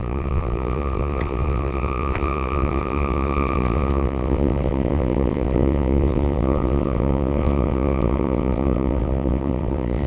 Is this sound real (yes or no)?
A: no